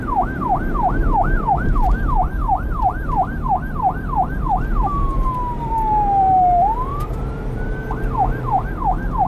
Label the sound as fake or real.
fake